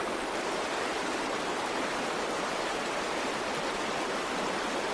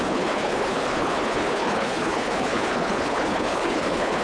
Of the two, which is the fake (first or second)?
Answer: second